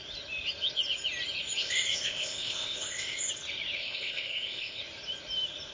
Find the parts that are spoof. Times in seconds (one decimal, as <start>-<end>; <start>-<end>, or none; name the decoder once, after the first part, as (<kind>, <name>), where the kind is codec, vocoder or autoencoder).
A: 1.6-3.3 (codec, ZipCodec); 3.8-4.8